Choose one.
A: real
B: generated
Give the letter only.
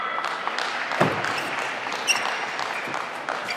A